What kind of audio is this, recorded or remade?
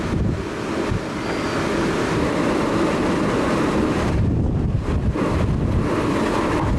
recorded